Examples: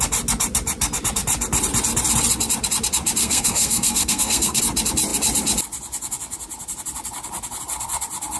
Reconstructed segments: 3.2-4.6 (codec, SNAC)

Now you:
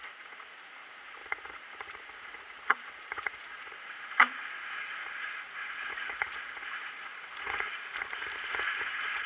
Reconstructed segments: 0.0-7.7 (vocoder, Vocos); 8.9-9.3

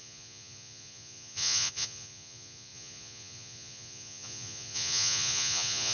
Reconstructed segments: 0.0-5.9 (vocoder, Vocos)

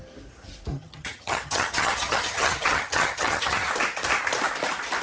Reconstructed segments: 0.7-3.7 (vocoder, HiFi-GAN)

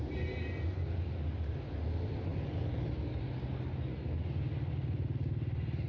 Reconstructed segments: none